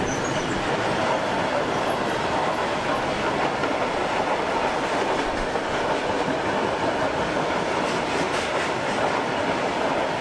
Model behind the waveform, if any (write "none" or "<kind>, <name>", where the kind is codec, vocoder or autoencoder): none